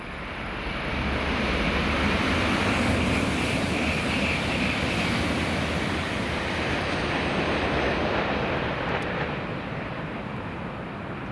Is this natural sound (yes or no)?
yes